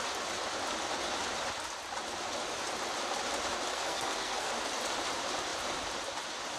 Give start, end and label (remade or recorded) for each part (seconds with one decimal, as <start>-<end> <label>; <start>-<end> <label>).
0.0-3.7 recorded; 3.7-4.5 remade; 4.5-6.6 recorded